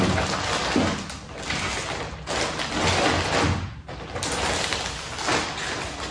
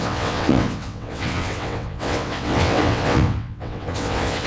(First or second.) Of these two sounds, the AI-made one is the second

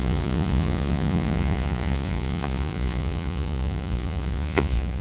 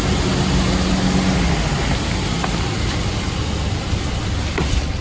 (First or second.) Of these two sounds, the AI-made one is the first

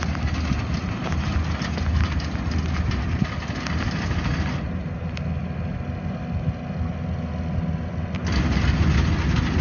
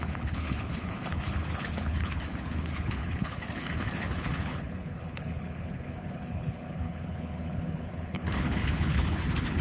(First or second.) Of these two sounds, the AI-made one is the second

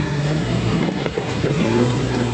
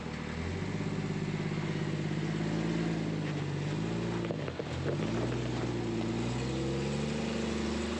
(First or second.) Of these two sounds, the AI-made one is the first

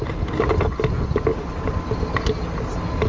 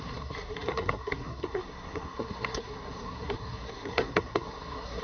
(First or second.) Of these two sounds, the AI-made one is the second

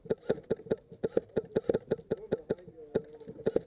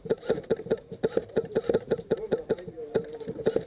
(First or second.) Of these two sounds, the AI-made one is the second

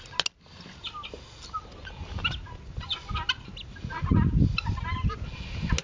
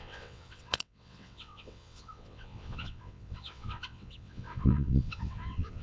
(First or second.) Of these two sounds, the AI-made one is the second